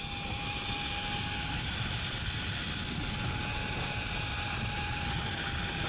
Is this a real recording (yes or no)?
yes